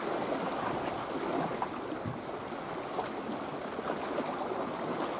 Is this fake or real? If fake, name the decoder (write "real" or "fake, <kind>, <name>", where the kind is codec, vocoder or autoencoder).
real